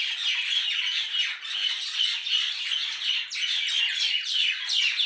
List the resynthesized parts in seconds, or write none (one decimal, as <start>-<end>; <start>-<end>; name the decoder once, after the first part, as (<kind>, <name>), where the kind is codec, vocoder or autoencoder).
none